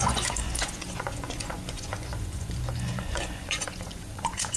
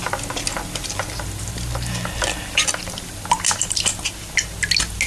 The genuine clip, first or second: second